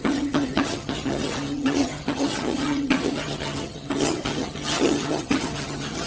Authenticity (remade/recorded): remade